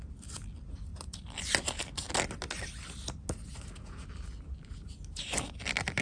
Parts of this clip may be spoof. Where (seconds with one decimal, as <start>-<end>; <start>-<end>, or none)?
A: none